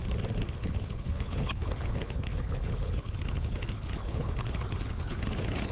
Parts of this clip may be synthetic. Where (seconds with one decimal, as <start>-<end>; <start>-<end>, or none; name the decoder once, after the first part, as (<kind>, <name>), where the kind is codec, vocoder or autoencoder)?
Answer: 0.6-5.7 (codec, HILCodec)